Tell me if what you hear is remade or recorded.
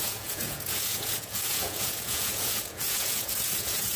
remade